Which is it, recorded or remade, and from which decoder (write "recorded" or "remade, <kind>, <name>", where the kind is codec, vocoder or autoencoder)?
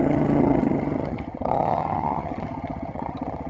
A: remade, vocoder, HiFi-GAN